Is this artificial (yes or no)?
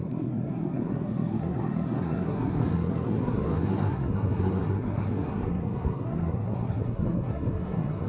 yes